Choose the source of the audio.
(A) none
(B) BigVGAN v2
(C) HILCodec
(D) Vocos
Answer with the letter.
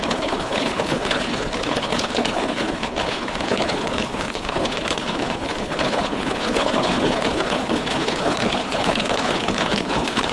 C